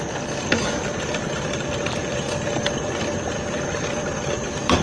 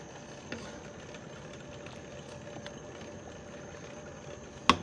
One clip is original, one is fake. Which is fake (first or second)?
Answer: first